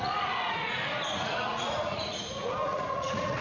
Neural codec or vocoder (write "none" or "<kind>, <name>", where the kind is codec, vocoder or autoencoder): vocoder, Vocos